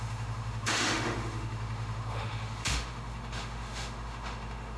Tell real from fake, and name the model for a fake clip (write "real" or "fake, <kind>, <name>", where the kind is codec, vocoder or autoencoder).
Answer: fake, autoencoder, DAC-VAE